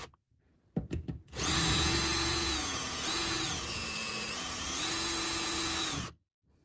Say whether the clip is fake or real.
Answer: fake